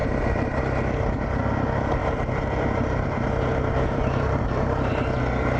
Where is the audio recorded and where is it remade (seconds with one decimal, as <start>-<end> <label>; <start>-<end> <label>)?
0.0-1.4 remade; 1.4-2.0 recorded; 2.0-4.9 remade; 4.9-5.6 recorded